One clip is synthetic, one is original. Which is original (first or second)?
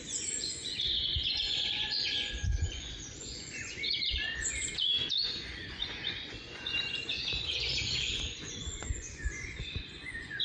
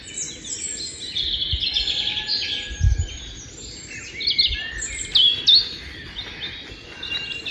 second